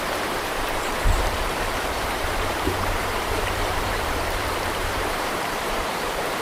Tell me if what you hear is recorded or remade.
remade